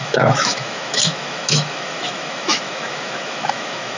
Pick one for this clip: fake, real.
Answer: fake